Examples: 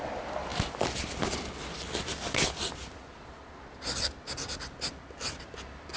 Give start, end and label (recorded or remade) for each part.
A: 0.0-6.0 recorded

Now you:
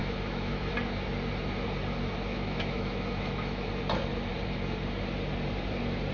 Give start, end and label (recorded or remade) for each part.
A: 0.0-0.7 remade; 0.7-2.3 recorded; 2.3-3.7 remade; 3.7-6.1 recorded